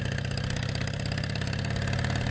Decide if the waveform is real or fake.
real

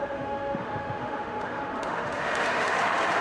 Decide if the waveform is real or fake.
fake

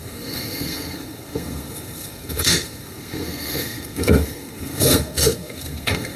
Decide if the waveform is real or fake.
fake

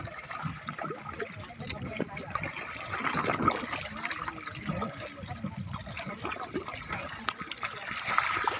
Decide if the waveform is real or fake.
real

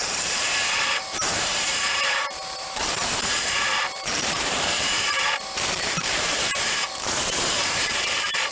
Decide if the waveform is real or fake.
fake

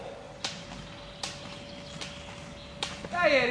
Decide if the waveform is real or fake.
real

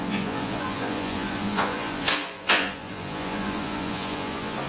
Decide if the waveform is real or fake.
fake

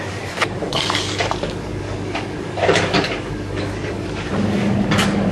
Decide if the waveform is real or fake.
fake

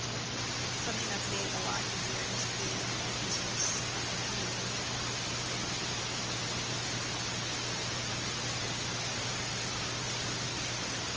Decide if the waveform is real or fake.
real